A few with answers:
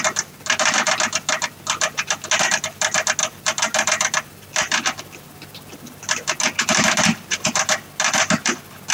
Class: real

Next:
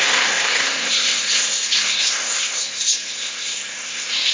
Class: fake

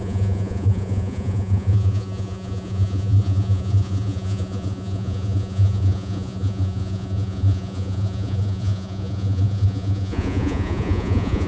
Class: fake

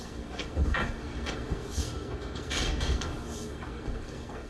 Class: fake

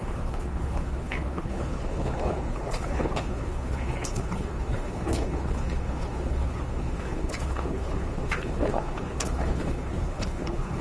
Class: fake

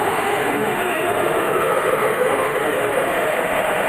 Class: fake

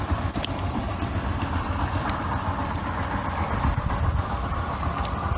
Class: fake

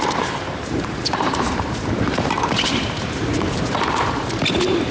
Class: fake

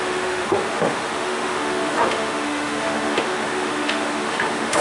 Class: fake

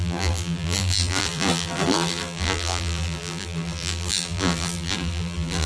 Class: fake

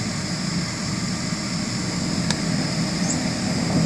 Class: real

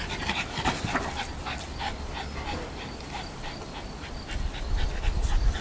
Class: real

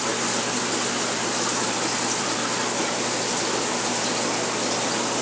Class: real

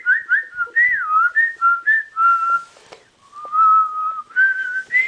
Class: real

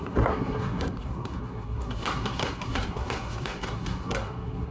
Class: fake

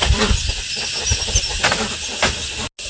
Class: real